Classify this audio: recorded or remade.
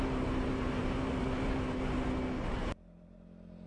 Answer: recorded